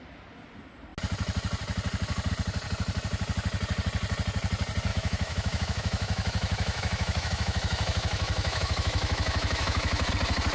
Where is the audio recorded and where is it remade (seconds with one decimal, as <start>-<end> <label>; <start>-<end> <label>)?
0.0-4.9 recorded; 4.9-10.1 remade; 10.1-10.5 recorded